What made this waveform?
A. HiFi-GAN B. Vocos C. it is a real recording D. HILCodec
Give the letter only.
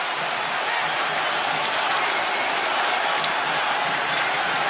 C